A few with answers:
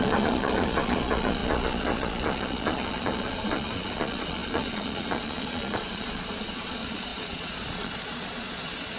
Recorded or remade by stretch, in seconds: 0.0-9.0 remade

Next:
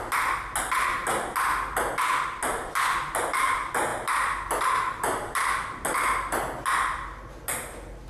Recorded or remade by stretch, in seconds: 0.0-8.1 recorded

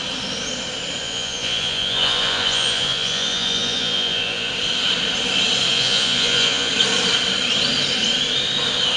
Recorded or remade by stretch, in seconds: 0.0-1.0 recorded; 1.0-4.5 remade; 4.5-5.7 recorded; 5.7-6.7 remade; 6.7-9.0 recorded

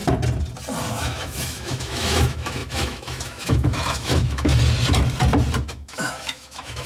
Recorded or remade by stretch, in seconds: 0.0-0.9 recorded; 0.9-4.5 remade; 4.5-5.6 recorded; 5.6-6.9 remade

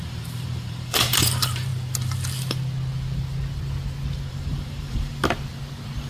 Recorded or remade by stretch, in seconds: 0.0-1.7 remade; 1.7-4.3 recorded; 4.3-5.1 remade; 5.1-6.1 recorded

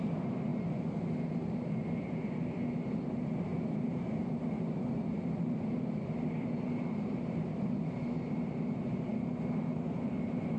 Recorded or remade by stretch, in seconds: 0.0-0.5 remade; 0.5-3.0 recorded; 3.0-9.1 remade; 9.1-9.7 recorded; 9.7-10.6 remade

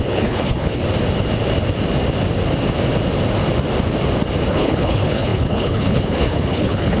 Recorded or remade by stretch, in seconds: 0.0-0.8 remade; 0.8-4.5 recorded; 4.5-7.0 remade

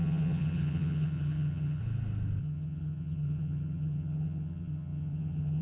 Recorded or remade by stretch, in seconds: 0.0-1.8 remade; 1.8-2.4 recorded; 2.4-5.6 remade